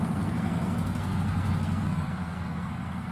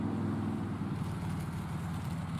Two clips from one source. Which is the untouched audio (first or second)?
second